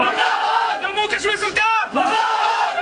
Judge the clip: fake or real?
fake